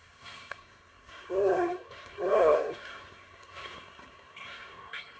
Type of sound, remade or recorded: remade